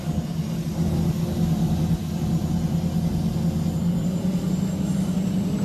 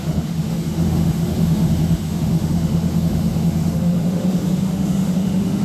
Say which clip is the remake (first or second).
second